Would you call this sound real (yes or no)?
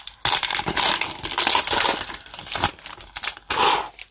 yes